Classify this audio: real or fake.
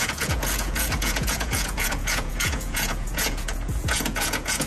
fake